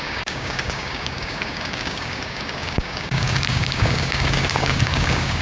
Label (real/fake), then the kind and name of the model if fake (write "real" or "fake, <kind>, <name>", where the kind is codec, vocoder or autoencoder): fake, codec, DAC